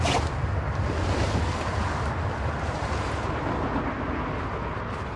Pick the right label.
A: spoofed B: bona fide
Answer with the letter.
B